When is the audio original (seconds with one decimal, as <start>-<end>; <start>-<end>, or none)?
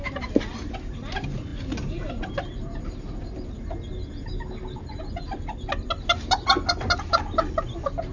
0.0-8.1